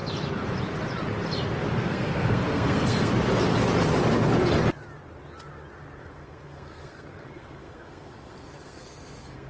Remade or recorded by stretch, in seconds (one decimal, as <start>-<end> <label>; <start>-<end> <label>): 0.0-1.8 recorded; 1.8-3.1 remade; 3.1-6.0 recorded; 6.0-9.5 remade